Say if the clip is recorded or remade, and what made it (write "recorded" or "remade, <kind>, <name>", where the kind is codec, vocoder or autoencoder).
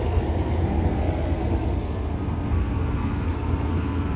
remade, codec, SNAC